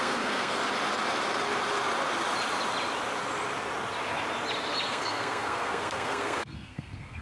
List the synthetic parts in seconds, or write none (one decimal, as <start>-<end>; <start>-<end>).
0.0-0.6; 4.9-7.2